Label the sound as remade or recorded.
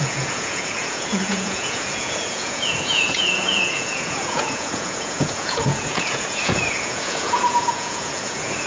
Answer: remade